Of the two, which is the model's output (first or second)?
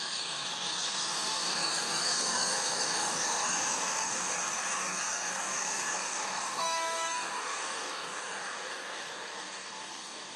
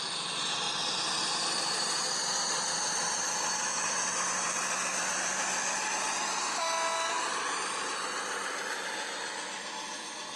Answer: first